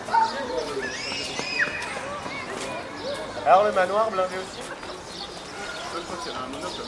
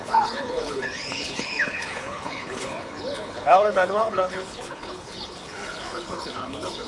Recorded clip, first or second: first